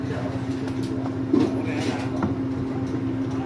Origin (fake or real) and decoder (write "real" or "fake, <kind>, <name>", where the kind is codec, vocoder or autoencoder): real